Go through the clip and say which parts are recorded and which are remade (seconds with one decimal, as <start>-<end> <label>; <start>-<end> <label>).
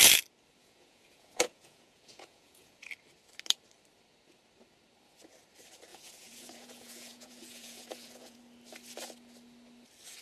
0.0-0.6 recorded; 0.6-2.9 remade; 2.9-5.9 recorded; 5.9-8.4 remade; 8.4-10.2 recorded